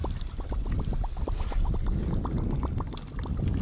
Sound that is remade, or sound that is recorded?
recorded